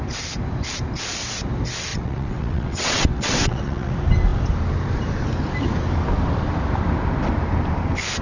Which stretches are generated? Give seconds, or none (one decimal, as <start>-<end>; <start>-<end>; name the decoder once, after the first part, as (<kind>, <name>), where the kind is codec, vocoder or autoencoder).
1.9-3.9 (vocoder, WaveNeXt)

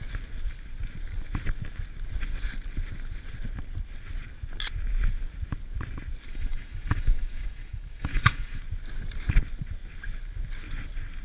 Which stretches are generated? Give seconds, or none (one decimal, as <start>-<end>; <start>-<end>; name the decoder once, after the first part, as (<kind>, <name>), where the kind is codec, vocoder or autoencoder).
6.3-8.6 (autoencoder, DAC-VAE)

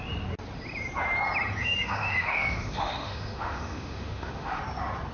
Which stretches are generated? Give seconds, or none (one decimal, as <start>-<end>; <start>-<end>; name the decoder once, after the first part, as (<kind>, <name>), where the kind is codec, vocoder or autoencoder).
1.6-4.6 (autoencoder, DAC-VAE)

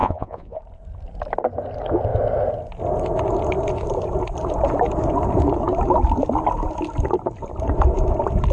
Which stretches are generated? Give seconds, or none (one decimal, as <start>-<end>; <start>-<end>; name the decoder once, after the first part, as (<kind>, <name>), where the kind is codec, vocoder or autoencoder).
0.0-0.6 (vocoder, Vocos)